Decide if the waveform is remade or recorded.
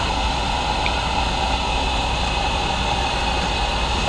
recorded